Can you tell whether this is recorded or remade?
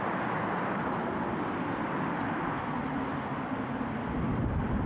recorded